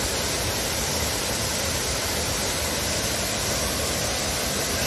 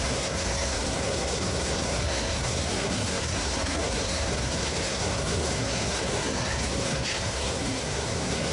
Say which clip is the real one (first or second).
first